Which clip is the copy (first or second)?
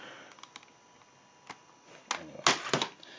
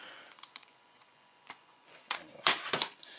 second